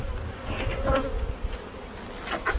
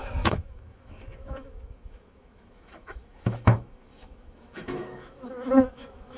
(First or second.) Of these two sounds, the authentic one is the first